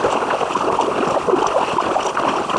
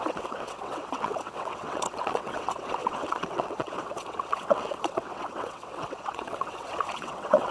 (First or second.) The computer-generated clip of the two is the second